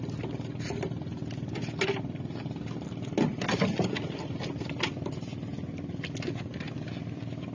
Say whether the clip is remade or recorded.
recorded